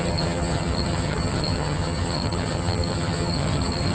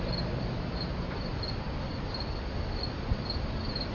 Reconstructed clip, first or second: first